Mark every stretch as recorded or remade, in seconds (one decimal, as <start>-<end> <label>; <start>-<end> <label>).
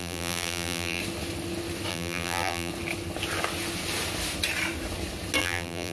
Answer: 0.0-1.0 remade; 1.0-1.9 recorded; 1.9-2.7 remade; 2.7-5.4 recorded; 5.4-5.9 remade